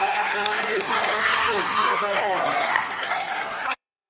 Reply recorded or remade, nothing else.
remade